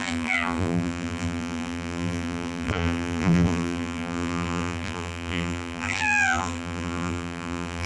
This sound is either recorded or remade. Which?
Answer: remade